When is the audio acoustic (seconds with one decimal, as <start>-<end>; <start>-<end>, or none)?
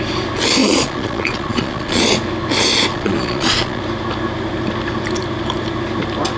0.0-0.6; 2.0-2.9; 3.8-6.4